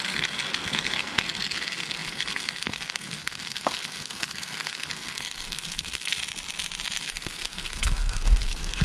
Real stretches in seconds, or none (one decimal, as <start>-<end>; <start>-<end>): 6.2-7.0